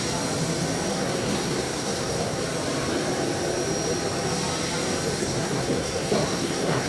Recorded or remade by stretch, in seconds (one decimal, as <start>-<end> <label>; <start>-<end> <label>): 0.0-0.9 recorded; 0.9-2.4 remade; 2.4-5.2 recorded; 5.2-6.9 remade